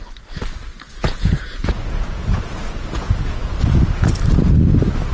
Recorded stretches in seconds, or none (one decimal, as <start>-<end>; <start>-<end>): 0.0-0.7; 3.5-5.1